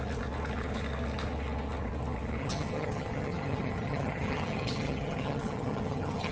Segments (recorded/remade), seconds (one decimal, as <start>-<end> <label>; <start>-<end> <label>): 0.0-2.4 recorded; 2.4-6.3 remade